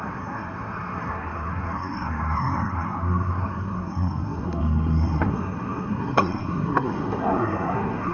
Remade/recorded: remade